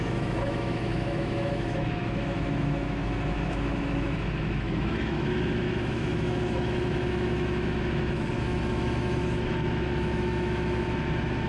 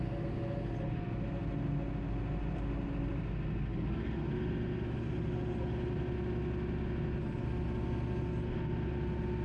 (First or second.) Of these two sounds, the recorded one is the second